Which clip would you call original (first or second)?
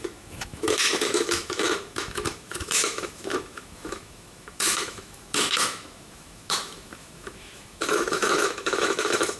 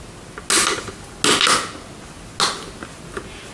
second